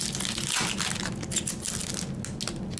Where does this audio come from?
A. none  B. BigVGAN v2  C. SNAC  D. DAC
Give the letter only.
A